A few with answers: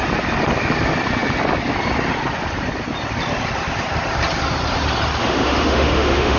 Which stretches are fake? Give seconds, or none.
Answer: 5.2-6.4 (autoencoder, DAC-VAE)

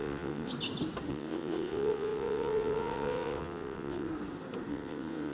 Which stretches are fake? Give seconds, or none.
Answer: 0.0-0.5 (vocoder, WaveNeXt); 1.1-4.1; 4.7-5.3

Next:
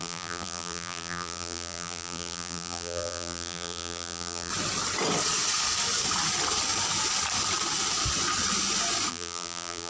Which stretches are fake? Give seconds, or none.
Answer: 0.0-4.5 (vocoder, BigVGAN v2); 9.1-9.9

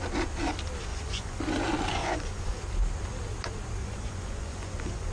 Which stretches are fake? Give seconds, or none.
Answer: 0.9-1.4 (vocoder, Vocos); 2.0-2.6; 3.8-5.1